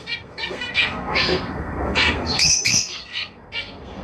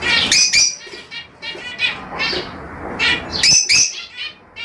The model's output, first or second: first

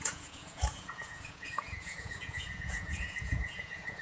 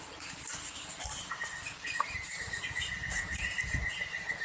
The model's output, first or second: first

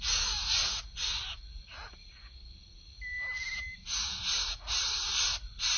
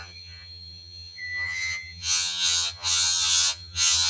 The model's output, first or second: second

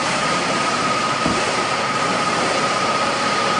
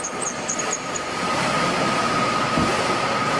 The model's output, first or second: first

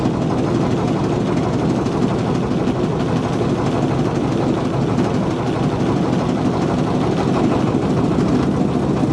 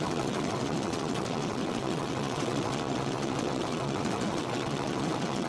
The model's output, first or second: second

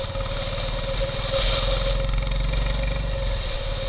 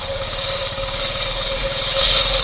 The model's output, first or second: second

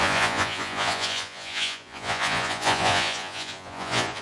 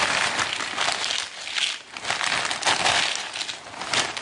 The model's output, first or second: first